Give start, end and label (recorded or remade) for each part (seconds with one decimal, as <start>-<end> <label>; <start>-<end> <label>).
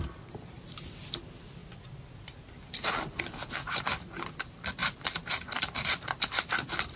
0.0-1.6 remade; 1.6-3.8 recorded; 3.8-7.0 remade